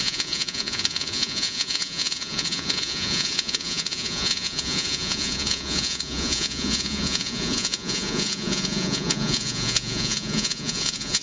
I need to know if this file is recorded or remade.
remade